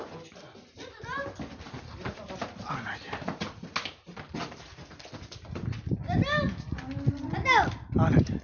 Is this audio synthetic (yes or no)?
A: no